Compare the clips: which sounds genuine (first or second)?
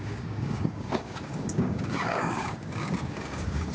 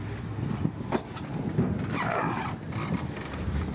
second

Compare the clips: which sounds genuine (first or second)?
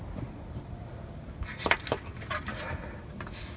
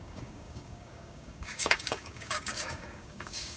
first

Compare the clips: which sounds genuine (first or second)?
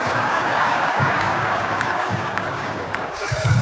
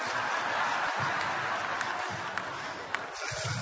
second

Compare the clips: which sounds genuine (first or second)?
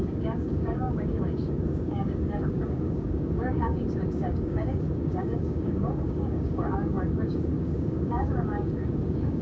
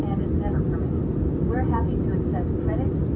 second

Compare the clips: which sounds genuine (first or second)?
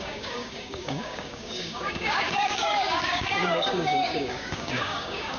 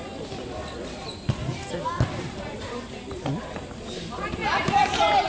second